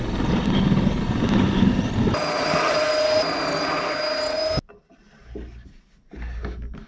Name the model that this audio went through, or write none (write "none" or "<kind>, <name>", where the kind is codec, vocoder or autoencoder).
none